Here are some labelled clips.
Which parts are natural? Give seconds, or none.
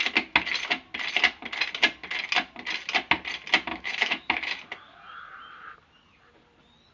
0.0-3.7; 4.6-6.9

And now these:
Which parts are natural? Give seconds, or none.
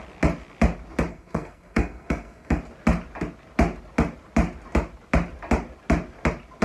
0.0-1.1; 2.6-6.6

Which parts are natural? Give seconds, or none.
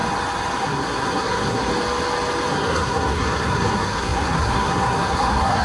0.0-0.6; 1.7-2.5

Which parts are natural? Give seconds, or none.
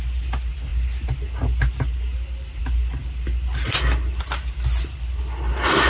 0.0-5.9